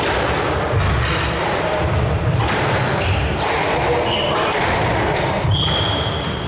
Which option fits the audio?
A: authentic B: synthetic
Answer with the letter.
A